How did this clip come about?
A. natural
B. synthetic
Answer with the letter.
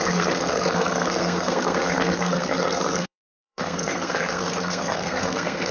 B